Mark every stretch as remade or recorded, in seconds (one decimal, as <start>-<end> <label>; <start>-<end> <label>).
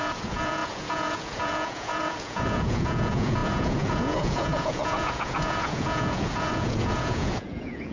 0.0-7.9 remade